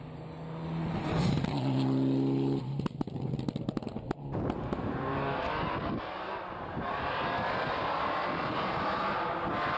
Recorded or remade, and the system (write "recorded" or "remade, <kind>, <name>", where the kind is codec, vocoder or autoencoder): recorded